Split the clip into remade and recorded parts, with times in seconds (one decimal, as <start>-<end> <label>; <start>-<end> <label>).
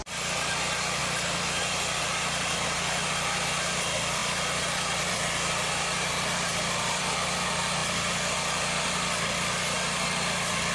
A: 0.0-10.7 recorded